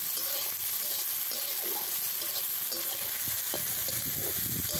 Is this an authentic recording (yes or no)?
yes